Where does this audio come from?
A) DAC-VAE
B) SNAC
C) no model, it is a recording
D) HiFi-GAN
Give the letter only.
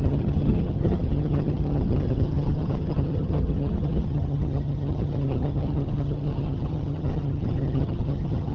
D